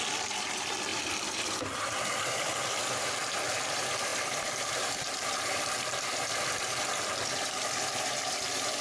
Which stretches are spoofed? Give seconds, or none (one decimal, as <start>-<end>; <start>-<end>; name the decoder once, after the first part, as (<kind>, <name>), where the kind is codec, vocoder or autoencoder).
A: 0.0-8.8 (vocoder, BigVGAN v2)